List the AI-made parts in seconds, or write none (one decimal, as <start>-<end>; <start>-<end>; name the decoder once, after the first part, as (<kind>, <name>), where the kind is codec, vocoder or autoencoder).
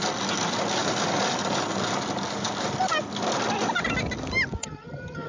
4.6-5.3 (vocoder, HiFi-GAN)